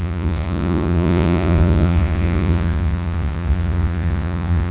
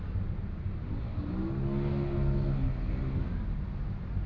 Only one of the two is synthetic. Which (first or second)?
first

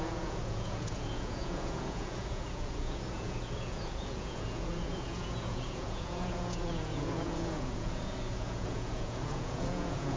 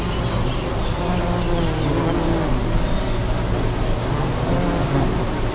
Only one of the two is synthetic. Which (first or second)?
first